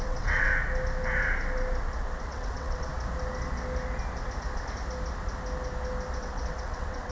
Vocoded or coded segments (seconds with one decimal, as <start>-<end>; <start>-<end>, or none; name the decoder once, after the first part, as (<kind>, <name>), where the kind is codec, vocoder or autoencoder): 0.0-0.5 (vocoder, WaveNeXt); 2.2-2.9; 6.2-7.1